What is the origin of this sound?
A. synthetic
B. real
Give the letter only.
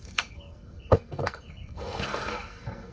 A